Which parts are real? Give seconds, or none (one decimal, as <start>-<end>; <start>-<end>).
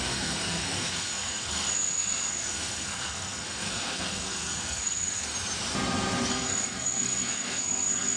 5.3-6.3